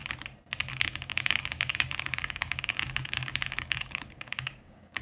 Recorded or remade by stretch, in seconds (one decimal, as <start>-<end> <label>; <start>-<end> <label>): 0.0-0.7 recorded; 0.7-5.0 remade